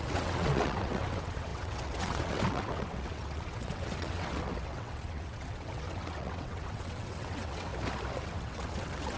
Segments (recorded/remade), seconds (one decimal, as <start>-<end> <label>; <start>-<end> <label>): 0.0-7.7 remade; 7.7-8.2 recorded; 8.2-9.2 remade